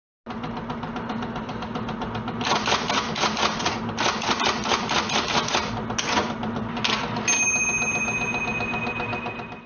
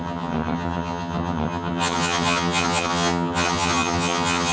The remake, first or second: second